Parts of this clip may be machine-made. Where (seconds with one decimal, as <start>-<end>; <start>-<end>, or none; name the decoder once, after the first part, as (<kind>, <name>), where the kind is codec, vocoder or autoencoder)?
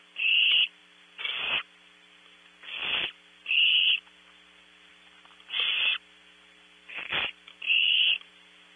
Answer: 7.8-8.3 (vocoder, BigVGAN v2)